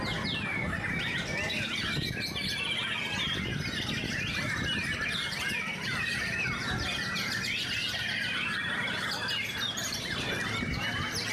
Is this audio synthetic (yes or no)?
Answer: no